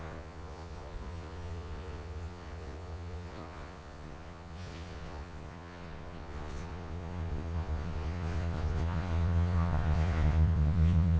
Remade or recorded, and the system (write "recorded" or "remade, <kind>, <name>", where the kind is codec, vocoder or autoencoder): remade, vocoder, Vocos